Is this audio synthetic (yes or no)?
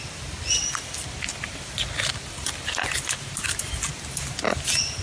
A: no